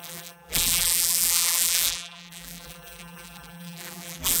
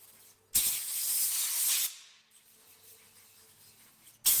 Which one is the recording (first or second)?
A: second